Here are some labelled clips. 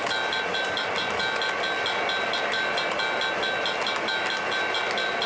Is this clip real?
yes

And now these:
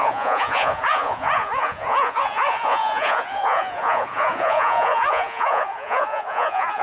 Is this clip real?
no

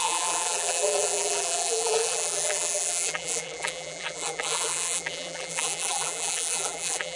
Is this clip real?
no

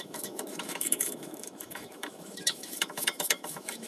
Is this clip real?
no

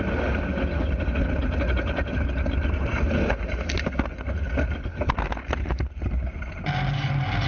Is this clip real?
yes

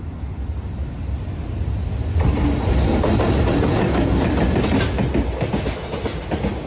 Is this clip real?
yes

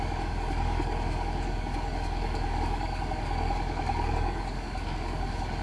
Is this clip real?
no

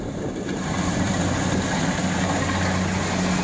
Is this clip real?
yes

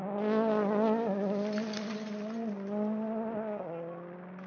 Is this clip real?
yes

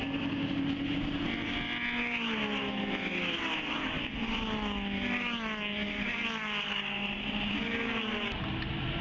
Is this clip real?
yes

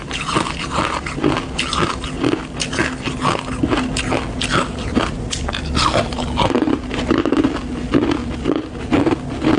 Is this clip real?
yes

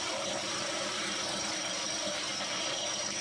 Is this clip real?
no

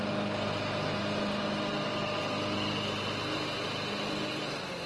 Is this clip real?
yes